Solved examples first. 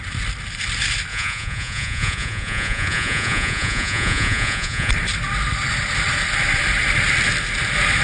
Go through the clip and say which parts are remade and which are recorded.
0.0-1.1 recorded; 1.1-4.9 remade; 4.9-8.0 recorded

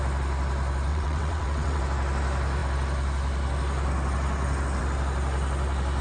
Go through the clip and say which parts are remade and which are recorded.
0.0-0.9 recorded; 0.9-1.8 remade; 1.8-6.0 recorded

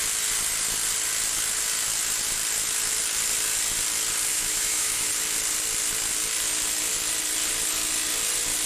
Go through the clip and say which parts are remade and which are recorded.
0.0-4.3 recorded; 4.3-5.1 remade; 5.1-8.7 recorded

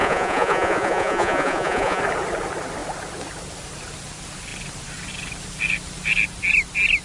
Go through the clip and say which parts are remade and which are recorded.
0.0-2.0 remade; 2.0-7.0 recorded

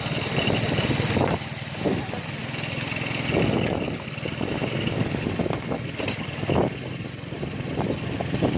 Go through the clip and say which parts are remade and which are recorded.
0.0-8.6 recorded